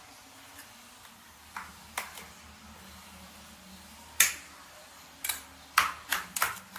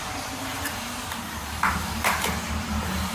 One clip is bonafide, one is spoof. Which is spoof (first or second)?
second